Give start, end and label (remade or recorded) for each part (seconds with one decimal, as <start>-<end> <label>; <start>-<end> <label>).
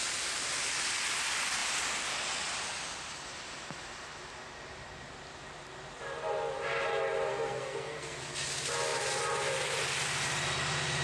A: 0.0-7.3 recorded; 7.3-8.5 remade; 8.5-11.0 recorded